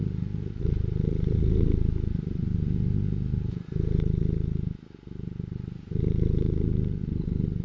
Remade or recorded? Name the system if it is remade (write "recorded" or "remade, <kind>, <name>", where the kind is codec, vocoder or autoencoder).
recorded